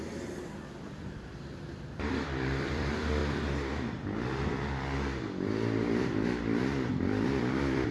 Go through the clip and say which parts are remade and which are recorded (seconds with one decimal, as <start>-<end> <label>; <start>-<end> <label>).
0.0-3.2 remade; 3.2-6.9 recorded; 6.9-7.9 remade